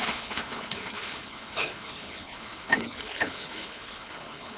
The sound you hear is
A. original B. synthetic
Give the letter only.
B